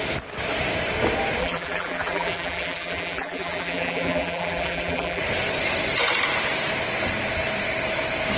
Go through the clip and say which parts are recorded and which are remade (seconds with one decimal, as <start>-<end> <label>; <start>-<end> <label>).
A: 0.0-1.4 recorded; 1.4-5.2 remade; 5.2-8.4 recorded